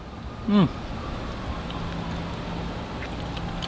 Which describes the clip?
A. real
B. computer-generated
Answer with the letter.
A